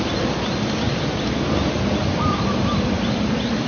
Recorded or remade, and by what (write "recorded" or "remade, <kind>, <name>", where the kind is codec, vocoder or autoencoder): recorded